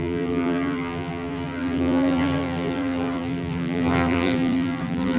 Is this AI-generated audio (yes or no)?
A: yes